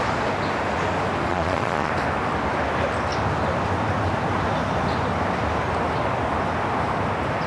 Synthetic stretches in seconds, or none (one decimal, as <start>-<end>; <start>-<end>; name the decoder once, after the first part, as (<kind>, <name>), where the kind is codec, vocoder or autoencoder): 1.3-1.9 (vocoder, Vocos)